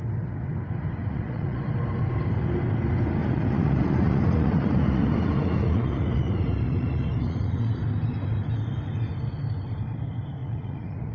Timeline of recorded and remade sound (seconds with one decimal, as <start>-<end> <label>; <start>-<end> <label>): 0.0-1.0 recorded; 1.0-1.6 remade; 1.6-3.2 recorded; 3.2-7.8 remade; 7.8-10.4 recorded; 10.4-11.1 remade